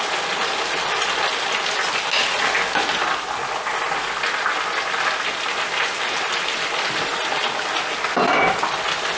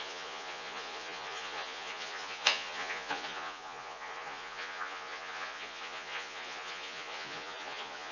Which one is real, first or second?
first